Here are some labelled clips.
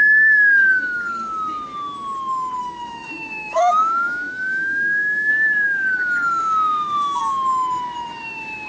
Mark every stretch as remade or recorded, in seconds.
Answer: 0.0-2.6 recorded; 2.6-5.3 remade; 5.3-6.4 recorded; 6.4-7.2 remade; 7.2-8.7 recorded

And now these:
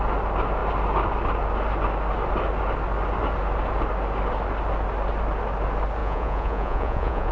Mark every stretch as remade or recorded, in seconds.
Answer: 0.0-6.0 recorded; 6.0-7.3 remade

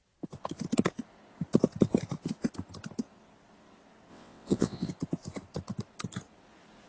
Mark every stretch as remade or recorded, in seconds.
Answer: 0.0-4.1 recorded; 4.1-4.9 remade; 4.9-6.9 recorded

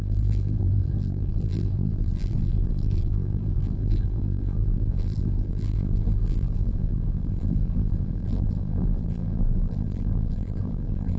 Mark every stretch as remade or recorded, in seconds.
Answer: 0.0-11.2 remade

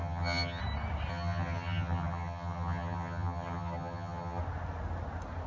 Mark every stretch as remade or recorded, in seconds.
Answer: 0.0-0.6 remade; 0.6-1.1 recorded; 1.1-4.4 remade; 4.4-5.5 recorded

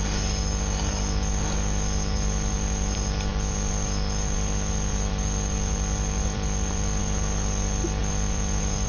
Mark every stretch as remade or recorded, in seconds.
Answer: 0.0-3.3 recorded; 3.3-7.0 remade; 7.0-8.0 recorded; 8.0-8.9 remade

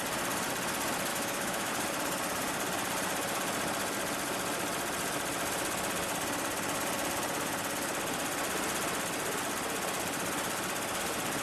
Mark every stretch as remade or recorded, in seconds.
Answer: 0.0-1.1 recorded; 1.1-1.7 remade; 1.7-11.4 recorded

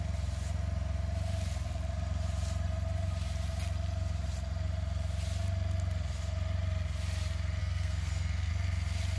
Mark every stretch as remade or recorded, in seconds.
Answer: 0.0-7.6 recorded; 7.6-8.5 remade; 8.5-9.2 recorded